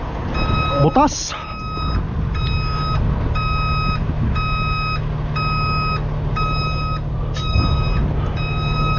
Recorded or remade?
recorded